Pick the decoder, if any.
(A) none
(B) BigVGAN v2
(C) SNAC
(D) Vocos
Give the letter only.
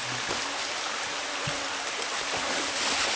A